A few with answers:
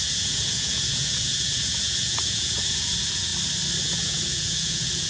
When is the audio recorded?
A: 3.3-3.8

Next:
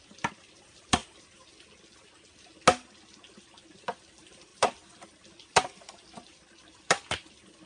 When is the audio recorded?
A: 1.0-3.8